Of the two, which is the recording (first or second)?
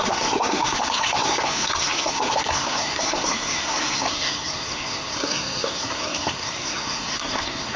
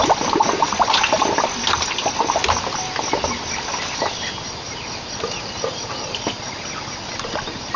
second